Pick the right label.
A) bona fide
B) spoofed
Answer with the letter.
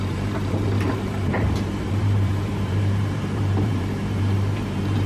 B